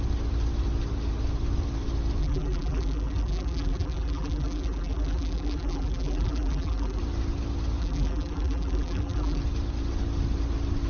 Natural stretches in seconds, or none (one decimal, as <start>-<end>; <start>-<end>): 0.0-2.2; 7.0-7.8; 9.4-10.9